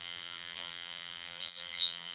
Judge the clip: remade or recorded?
remade